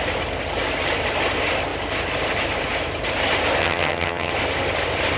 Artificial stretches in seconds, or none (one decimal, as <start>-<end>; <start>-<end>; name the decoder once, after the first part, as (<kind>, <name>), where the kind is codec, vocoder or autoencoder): 3.6-4.3 (vocoder, HiFi-GAN)